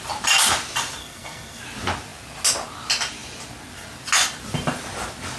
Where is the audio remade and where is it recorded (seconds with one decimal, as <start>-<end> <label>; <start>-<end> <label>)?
0.0-1.0 recorded; 1.0-1.6 remade; 1.6-5.4 recorded